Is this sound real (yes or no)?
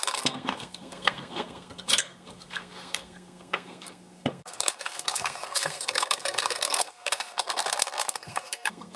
no